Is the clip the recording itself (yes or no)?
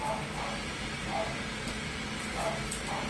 yes